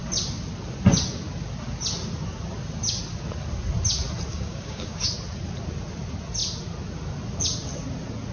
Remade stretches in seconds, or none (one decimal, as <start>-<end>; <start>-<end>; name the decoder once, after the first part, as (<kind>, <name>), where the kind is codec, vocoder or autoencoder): 4.3-5.1 (codec, DAC)